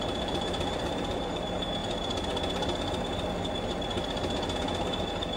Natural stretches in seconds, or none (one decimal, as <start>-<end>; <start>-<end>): 1.8-5.0